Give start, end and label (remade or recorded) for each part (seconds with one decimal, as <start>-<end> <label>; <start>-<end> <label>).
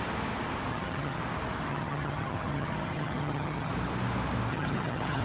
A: 0.0-0.7 recorded; 0.7-1.2 remade; 1.2-1.7 recorded; 1.7-3.7 remade; 3.7-4.5 recorded; 4.5-5.2 remade